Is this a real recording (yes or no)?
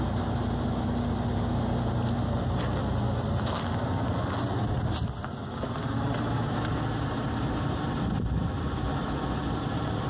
yes